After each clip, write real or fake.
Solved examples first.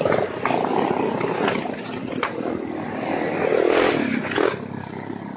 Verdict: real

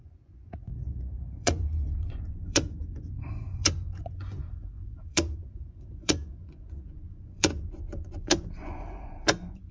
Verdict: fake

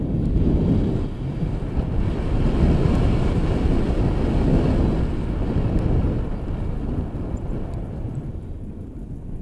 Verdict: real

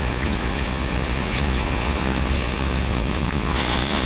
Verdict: fake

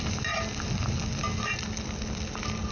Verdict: real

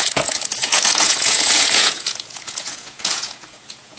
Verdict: fake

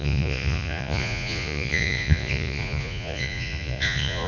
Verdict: fake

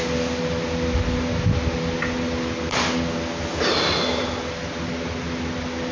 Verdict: real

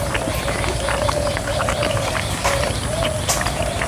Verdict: real